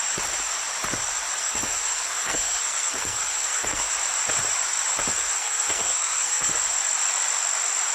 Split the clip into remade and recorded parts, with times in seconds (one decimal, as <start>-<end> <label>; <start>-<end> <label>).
0.0-1.4 recorded; 1.4-3.9 remade; 3.9-5.1 recorded; 5.1-6.5 remade; 6.5-7.9 recorded